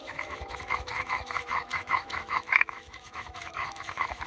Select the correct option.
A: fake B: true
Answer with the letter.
A